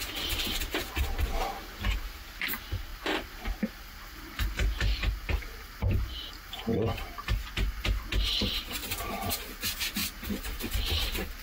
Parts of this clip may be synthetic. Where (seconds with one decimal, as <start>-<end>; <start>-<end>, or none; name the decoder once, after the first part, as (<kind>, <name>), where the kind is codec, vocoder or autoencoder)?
6.7-7.4 (vocoder, BigVGAN v2); 8.8-9.3; 10.0-10.7